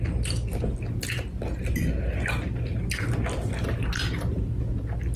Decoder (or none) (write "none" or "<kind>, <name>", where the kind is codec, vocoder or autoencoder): none